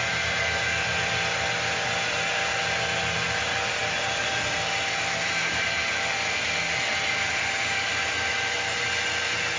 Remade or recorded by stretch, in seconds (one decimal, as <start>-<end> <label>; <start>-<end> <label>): 0.0-9.6 recorded